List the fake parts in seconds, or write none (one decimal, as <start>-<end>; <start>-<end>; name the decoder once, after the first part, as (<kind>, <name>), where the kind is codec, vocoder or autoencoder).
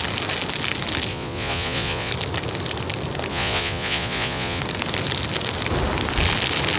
1.1-2.1 (vocoder, Vocos); 3.3-4.6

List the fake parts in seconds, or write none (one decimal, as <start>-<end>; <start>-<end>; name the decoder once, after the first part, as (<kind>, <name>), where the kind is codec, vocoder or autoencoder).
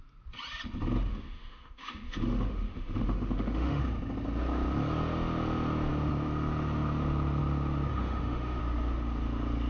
1.1-3.8 (autoencoder, DAC-VAE); 7.9-8.6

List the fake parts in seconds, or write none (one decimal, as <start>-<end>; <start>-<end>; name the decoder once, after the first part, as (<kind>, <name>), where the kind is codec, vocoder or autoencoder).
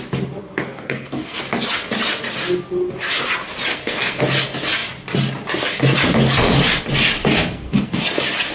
0.4-1.4 (codec, SNAC); 3.7-4.2; 7.2-8.0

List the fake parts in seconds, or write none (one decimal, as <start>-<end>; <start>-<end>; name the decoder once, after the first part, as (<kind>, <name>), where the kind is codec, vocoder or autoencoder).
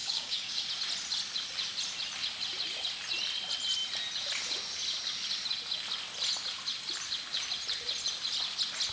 0.0-0.6 (codec, DAC)